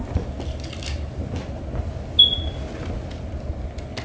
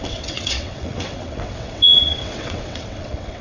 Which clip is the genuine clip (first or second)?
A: first